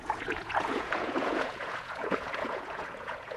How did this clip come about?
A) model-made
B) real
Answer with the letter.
A